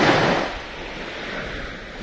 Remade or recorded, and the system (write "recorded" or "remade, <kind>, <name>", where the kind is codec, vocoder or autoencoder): recorded